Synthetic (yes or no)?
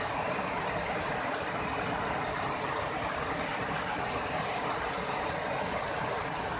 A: no